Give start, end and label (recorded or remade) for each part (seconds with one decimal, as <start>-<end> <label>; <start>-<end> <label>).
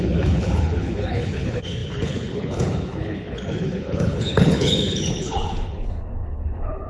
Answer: 0.0-6.9 remade